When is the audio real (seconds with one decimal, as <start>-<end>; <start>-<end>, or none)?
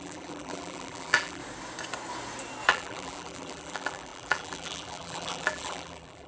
1.4-2.7